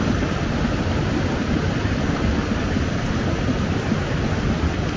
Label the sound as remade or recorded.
recorded